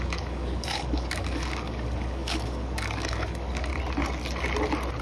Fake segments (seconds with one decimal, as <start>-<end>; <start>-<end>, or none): 0.0-3.7